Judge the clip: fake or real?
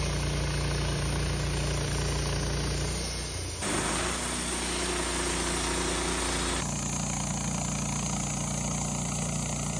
real